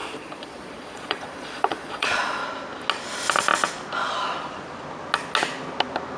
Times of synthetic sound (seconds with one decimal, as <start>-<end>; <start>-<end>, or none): 0.0-2.4